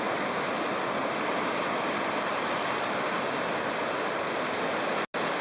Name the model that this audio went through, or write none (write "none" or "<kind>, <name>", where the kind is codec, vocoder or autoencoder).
none